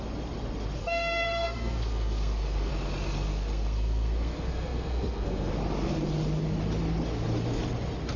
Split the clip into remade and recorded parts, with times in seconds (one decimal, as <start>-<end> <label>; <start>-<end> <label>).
0.0-0.8 recorded; 0.8-2.7 remade; 2.7-3.3 recorded; 3.3-5.5 remade; 5.5-8.2 recorded